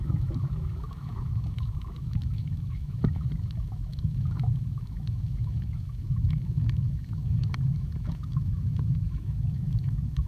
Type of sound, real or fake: fake